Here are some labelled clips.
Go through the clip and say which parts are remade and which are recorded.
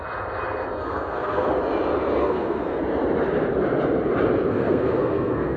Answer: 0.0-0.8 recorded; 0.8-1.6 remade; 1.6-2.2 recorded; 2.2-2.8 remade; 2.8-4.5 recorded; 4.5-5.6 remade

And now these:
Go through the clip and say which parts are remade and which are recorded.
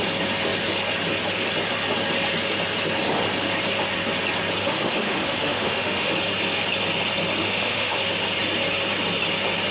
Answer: 0.0-4.6 recorded; 4.6-6.1 remade; 6.1-7.4 recorded; 7.4-8.0 remade; 8.0-9.7 recorded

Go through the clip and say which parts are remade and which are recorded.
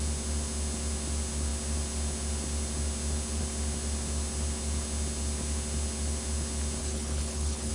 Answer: 0.0-6.8 recorded; 6.8-7.7 remade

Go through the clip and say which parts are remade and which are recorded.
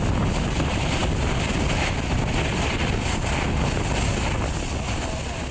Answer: 0.0-5.5 recorded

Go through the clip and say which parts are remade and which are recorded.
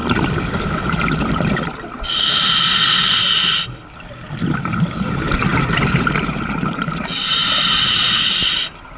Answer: 0.0-2.9 remade; 2.9-5.5 recorded; 5.5-6.4 remade; 6.4-9.0 recorded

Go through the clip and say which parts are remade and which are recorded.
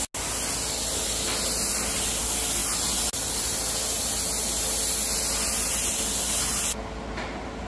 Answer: 0.0-7.7 recorded